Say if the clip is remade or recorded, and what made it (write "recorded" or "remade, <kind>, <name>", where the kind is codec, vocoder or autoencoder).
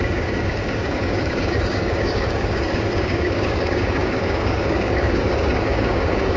remade, codec, DAC